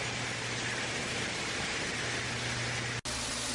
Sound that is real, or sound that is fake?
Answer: real